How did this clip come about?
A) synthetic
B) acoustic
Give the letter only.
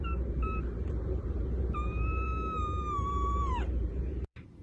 A